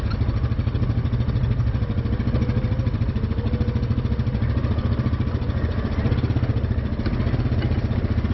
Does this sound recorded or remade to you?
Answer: recorded